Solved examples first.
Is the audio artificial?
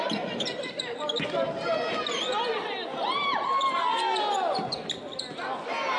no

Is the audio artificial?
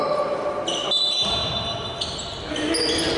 no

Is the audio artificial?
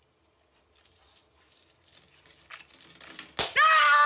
no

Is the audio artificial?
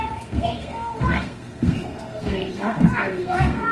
yes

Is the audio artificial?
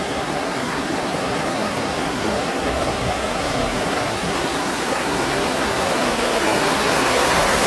yes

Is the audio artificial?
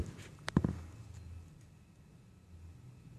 no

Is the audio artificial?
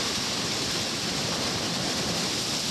no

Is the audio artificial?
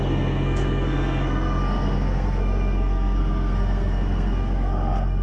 yes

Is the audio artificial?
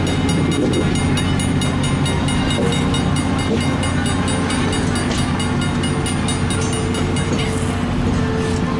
no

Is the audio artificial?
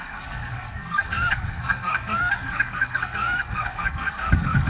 yes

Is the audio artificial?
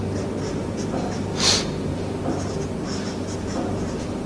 no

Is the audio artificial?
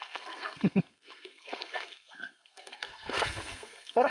yes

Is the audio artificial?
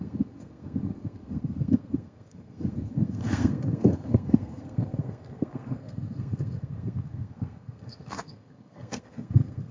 yes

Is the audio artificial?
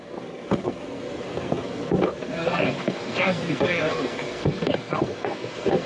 yes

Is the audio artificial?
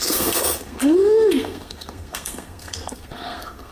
yes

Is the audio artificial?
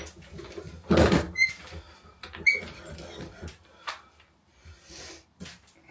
no